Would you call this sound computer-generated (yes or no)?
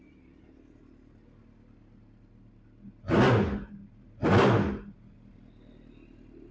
no